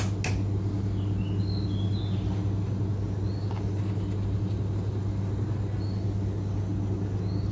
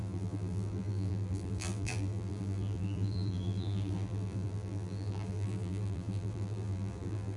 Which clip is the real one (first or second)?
first